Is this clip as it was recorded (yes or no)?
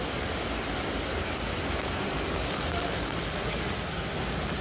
yes